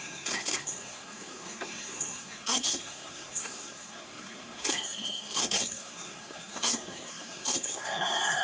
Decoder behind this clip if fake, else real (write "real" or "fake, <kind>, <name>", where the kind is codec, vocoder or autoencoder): fake, codec, SNAC